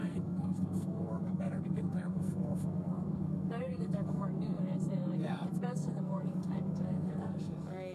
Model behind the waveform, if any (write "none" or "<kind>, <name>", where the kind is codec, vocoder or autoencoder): codec, SNAC